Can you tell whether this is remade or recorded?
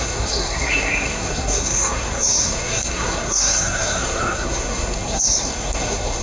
remade